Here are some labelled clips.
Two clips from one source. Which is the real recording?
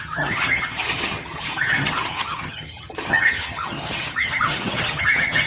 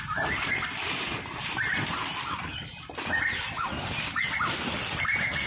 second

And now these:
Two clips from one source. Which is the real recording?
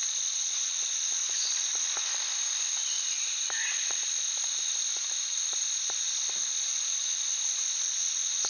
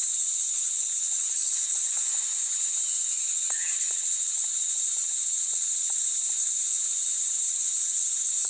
first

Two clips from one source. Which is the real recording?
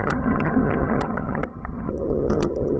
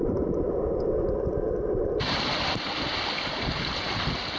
second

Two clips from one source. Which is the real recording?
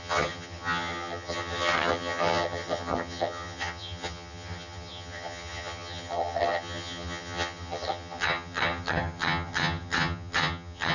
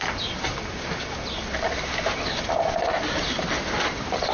second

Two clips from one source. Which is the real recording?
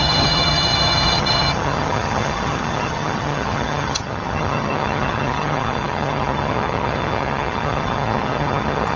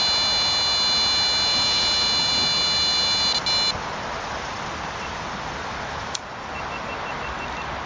second